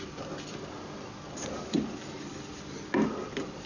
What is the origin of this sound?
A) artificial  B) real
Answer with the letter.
B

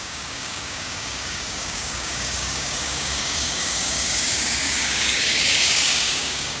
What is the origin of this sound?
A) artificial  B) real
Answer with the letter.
A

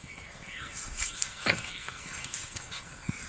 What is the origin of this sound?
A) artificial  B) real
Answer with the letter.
A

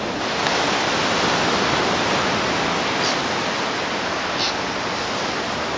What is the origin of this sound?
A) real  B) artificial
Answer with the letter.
A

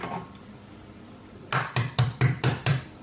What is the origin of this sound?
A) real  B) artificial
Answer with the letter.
B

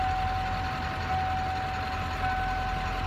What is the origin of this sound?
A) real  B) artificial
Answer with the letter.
A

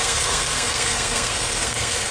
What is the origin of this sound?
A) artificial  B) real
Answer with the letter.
A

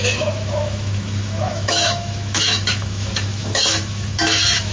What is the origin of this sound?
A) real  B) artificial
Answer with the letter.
B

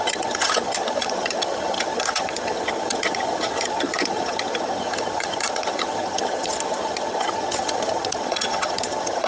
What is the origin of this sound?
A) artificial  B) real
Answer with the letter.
A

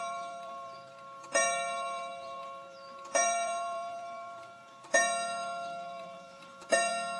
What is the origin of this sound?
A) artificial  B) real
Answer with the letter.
A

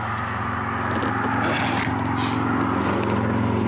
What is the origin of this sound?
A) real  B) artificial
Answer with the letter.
A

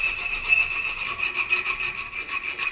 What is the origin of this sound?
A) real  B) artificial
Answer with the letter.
A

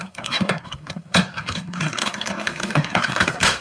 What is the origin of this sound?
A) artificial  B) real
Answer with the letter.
A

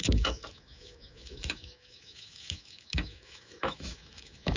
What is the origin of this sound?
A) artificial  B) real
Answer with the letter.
A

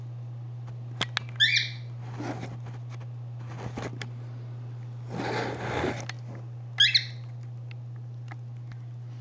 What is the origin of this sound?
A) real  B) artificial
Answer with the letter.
A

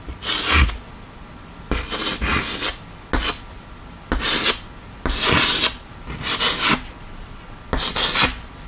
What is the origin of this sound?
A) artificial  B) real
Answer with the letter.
B